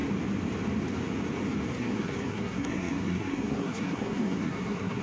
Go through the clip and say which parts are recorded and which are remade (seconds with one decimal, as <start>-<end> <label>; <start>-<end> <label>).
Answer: 0.0-1.7 recorded; 1.7-5.0 remade